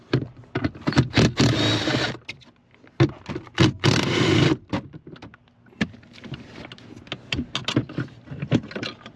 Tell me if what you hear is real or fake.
real